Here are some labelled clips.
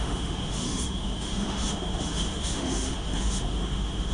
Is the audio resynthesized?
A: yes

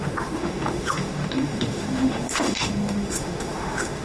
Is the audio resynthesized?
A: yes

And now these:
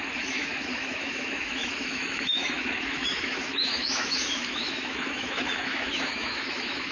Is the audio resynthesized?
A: yes